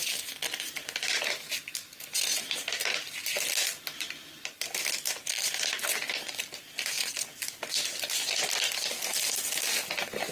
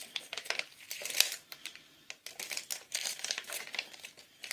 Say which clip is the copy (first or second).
second